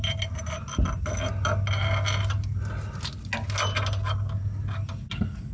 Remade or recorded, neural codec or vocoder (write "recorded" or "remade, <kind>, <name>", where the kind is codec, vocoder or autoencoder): recorded